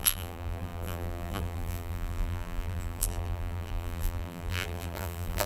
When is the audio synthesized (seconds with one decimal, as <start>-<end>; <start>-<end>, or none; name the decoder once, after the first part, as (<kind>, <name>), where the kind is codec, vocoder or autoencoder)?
0.0-5.5 (vocoder, BigVGAN v2)